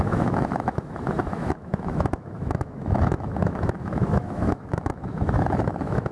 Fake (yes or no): yes